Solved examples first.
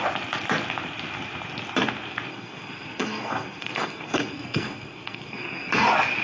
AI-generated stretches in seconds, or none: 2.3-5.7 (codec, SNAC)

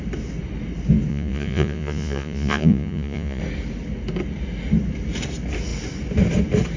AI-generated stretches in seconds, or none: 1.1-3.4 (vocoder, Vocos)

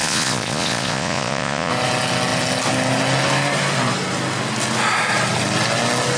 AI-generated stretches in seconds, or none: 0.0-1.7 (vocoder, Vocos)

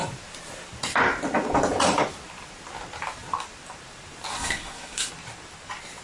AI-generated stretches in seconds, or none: 4.3-5.1 (codec, SNAC)